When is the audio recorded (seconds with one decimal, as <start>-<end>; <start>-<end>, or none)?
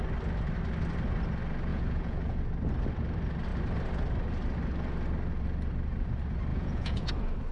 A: 0.0-1.7; 2.4-6.5; 7.1-7.5